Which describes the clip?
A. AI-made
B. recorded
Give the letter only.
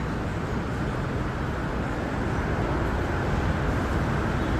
B